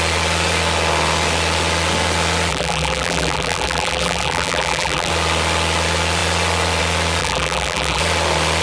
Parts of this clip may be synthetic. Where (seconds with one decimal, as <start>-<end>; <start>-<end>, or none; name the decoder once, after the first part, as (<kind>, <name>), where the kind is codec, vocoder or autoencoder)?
2.5-5.1 (vocoder, BigVGAN v2); 7.2-8.0